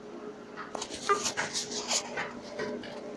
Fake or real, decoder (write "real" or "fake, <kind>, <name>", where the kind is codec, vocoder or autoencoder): real